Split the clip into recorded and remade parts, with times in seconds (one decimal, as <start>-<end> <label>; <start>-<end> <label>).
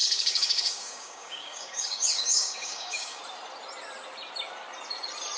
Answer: 0.0-3.2 remade; 3.2-5.4 recorded